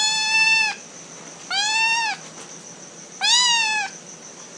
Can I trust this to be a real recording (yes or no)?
yes